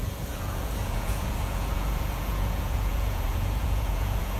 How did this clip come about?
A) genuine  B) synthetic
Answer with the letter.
B